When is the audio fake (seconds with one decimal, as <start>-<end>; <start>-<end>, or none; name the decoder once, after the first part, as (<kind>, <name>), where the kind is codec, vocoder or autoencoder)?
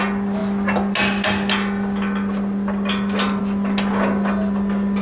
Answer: none